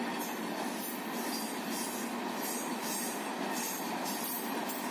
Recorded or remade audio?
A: recorded